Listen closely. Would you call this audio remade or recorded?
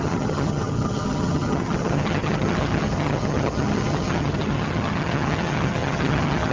remade